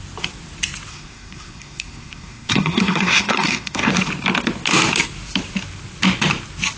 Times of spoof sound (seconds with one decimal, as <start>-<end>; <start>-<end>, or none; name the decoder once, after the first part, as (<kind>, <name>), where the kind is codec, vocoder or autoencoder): 0.9-3.9 (codec, SNAC)